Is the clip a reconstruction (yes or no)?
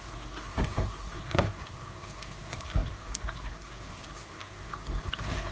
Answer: yes